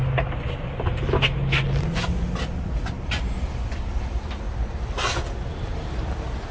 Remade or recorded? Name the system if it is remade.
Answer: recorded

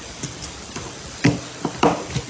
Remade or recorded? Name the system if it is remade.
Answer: recorded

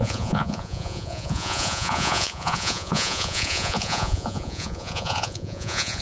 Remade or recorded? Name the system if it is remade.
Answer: remade, vocoder, Vocos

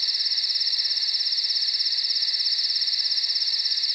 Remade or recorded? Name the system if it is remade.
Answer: recorded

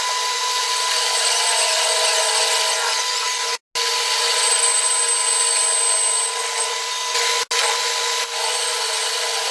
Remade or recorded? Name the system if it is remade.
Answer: recorded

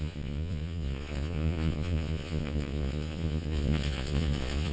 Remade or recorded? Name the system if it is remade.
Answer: remade, vocoder, Vocos